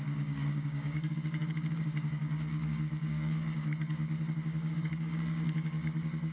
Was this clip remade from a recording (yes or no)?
yes